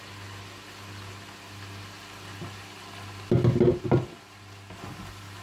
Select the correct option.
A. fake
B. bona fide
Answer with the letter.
B